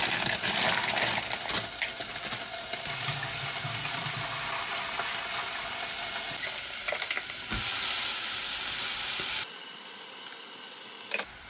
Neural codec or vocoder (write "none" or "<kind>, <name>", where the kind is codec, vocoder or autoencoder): none